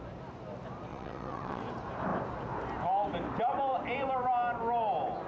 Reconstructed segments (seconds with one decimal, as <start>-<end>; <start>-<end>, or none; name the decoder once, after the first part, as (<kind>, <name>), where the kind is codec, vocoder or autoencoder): 0.9-1.6 (vocoder, WaveNeXt)